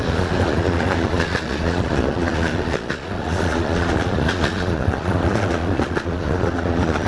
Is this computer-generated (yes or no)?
yes